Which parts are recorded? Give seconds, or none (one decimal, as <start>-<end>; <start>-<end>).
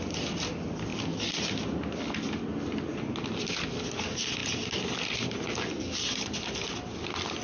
0.0-7.4